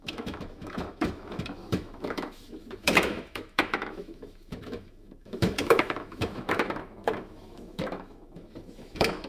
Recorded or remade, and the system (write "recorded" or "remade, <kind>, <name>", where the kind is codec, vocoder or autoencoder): remade, autoencoder, DAC-VAE